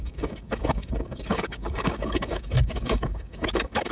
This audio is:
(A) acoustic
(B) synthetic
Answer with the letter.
B